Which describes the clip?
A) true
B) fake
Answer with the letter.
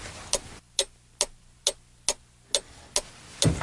A